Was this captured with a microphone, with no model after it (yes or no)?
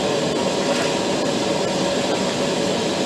yes